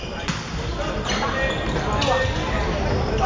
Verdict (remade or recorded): recorded